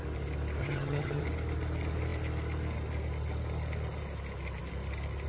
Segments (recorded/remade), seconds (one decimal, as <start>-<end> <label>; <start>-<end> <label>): 0.0-0.6 recorded; 0.6-1.2 remade; 1.2-5.3 recorded